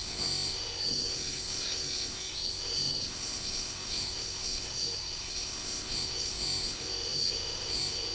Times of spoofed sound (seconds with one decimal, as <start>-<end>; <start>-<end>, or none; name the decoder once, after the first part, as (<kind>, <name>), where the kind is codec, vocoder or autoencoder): 0.0-8.1 (codec, SNAC)